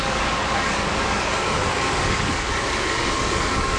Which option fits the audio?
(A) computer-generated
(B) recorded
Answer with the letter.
A